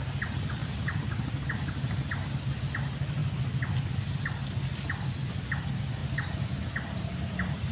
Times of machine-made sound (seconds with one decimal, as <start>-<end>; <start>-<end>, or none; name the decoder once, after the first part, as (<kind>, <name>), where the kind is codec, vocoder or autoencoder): none